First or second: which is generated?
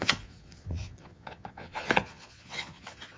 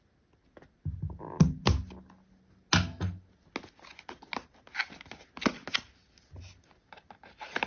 first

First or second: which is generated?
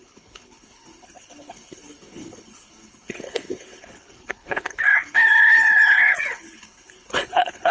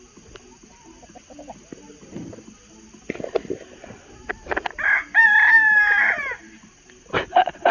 first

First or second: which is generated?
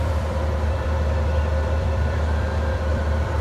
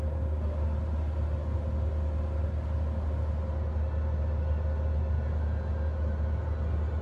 first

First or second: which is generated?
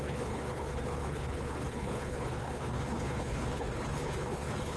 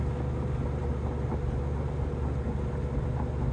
first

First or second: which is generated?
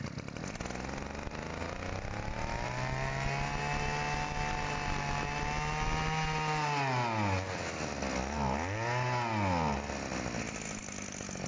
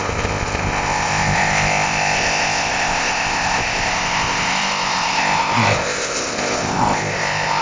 second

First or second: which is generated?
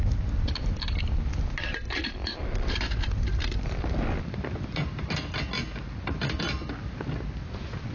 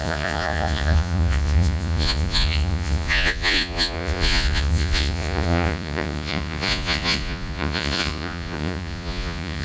second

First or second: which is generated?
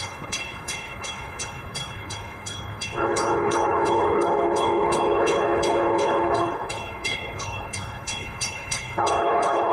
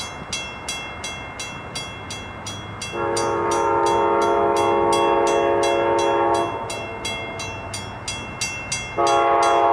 first